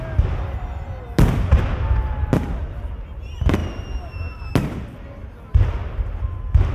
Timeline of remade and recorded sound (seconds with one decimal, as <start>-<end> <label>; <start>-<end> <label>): 0.0-6.7 recorded